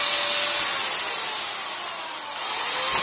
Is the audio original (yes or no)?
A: yes